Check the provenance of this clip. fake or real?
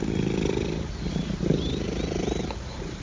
real